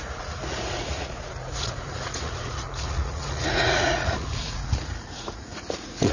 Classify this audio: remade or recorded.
remade